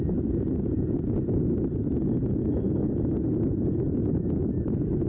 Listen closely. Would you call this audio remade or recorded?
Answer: recorded